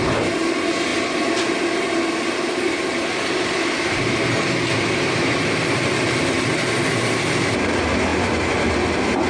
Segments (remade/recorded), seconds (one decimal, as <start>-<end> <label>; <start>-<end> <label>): 0.0-9.3 recorded